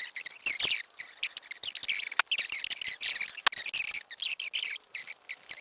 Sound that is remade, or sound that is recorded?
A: recorded